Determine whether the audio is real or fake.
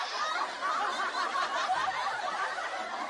real